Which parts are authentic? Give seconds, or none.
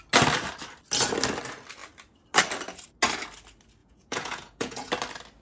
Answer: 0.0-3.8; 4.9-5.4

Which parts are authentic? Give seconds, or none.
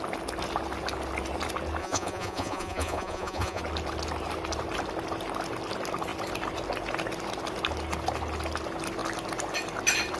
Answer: 0.0-1.8; 3.6-10.2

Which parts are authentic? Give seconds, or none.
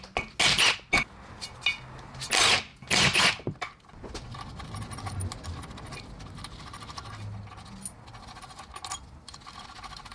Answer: 0.0-10.1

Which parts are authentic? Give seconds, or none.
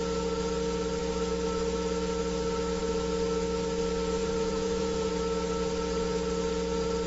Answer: 0.0-4.2; 5.1-7.1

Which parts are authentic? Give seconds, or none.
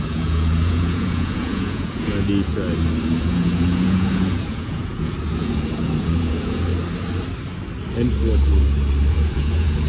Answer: 2.5-3.2; 6.7-9.1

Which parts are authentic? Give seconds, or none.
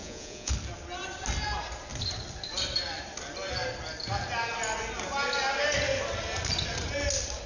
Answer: 0.5-7.5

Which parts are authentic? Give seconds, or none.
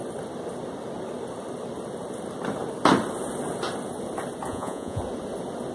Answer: 0.0-4.5; 5.0-5.7